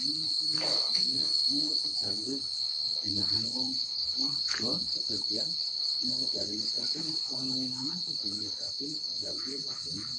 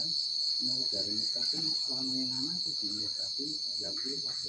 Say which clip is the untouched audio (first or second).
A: second